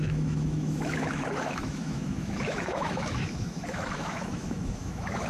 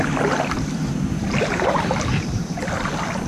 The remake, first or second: first